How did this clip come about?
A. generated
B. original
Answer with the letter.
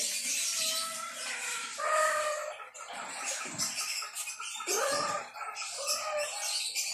B